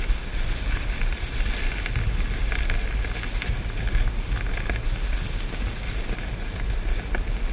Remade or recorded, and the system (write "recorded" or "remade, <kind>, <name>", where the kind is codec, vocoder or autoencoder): recorded